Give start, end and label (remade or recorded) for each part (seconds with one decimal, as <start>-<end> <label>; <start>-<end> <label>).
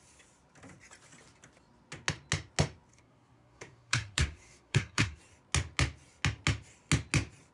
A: 0.0-2.9 recorded; 2.9-5.2 remade; 5.2-7.5 recorded